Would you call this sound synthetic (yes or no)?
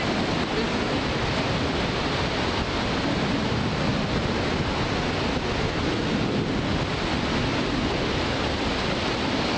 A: no